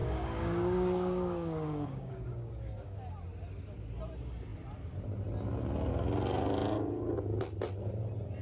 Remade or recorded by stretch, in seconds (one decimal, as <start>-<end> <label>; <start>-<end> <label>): 0.0-3.0 remade; 3.0-8.4 recorded